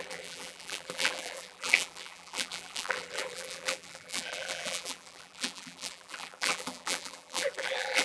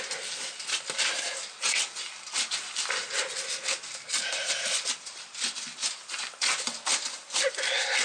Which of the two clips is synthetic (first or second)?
first